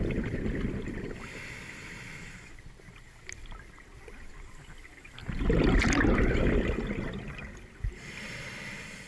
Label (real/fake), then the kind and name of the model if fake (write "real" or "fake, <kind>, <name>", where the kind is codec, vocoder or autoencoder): real